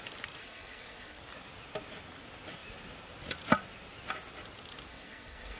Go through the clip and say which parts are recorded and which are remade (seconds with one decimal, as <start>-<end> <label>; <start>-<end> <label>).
0.0-0.4 recorded; 0.4-1.2 remade; 1.2-4.9 recorded; 4.9-5.6 remade